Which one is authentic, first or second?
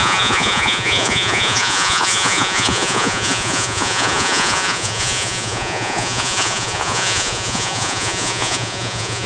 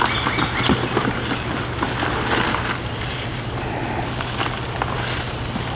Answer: second